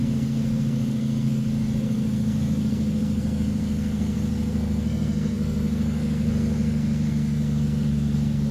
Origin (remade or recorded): remade